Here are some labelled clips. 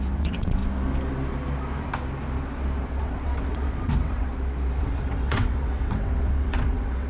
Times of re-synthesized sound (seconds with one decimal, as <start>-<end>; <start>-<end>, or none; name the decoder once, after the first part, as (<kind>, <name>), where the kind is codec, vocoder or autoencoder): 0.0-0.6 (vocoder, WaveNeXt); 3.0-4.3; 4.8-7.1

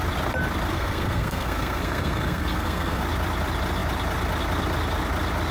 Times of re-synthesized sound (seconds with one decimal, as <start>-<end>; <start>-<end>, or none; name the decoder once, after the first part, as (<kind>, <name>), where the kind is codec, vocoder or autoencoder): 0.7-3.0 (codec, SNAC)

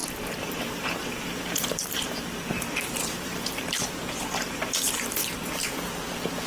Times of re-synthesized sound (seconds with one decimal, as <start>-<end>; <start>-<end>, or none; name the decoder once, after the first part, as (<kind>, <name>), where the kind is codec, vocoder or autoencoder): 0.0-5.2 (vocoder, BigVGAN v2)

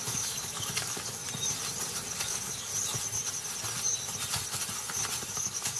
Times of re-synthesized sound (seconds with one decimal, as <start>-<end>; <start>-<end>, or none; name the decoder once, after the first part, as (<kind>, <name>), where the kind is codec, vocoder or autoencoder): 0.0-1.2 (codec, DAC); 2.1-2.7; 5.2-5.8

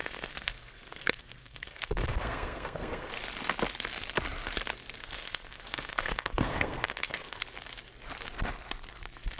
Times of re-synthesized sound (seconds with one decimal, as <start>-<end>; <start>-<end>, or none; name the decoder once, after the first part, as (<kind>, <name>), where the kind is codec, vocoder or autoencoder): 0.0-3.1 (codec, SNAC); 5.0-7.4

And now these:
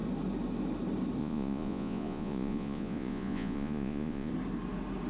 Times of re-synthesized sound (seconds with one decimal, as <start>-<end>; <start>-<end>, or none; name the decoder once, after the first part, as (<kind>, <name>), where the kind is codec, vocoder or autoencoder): 1.2-4.3 (vocoder, Vocos)

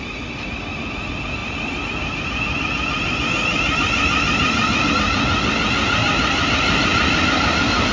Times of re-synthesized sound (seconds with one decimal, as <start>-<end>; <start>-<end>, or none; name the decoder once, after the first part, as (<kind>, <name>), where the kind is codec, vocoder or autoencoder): none

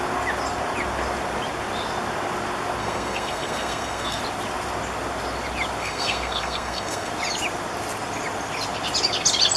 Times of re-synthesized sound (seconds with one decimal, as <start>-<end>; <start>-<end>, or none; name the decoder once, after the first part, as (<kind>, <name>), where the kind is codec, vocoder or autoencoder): 2.8-4.2 (codec, SNAC); 5.8-7.1